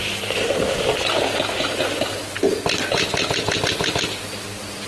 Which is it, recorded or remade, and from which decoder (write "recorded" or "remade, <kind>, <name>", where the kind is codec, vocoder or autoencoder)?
recorded